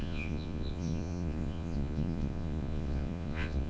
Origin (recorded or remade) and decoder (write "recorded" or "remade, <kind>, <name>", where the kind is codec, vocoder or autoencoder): remade, vocoder, Vocos